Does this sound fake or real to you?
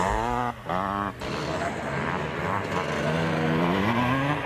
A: real